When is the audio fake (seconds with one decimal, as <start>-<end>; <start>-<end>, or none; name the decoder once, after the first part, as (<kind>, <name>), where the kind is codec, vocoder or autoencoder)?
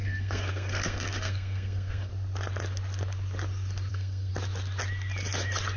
0.0-2.1 (codec, SNAC); 3.9-4.3